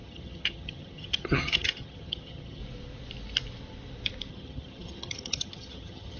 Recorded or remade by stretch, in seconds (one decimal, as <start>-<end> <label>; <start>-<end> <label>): 0.0-2.6 remade; 2.6-4.3 recorded; 4.3-6.2 remade